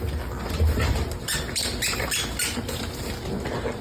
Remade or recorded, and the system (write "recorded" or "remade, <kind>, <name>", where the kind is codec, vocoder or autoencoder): recorded